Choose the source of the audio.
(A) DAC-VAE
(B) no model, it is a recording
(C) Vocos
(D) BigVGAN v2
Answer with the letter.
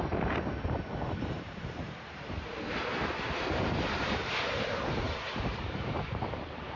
D